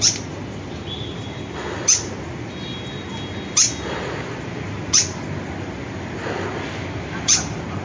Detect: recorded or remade recorded